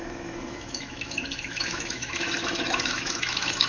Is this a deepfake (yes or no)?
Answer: yes